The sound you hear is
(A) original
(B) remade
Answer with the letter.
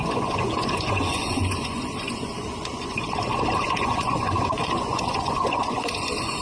B